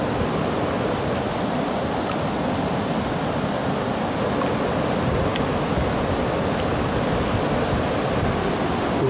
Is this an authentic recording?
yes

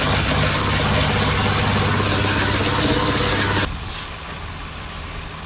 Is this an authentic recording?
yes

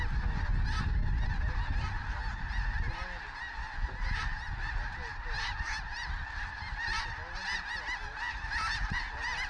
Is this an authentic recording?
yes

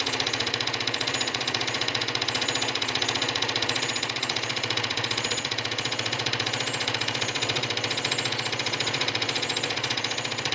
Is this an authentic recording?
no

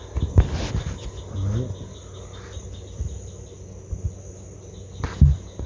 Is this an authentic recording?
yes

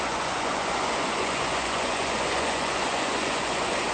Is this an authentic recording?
no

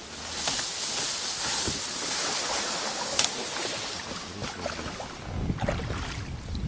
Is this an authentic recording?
yes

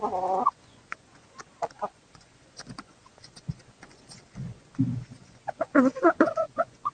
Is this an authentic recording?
no